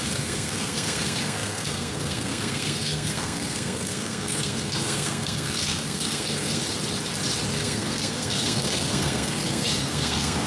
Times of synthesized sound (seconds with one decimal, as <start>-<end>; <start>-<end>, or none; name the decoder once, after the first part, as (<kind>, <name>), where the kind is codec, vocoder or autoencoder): 0.0-6.6 (codec, SNAC); 7.5-10.5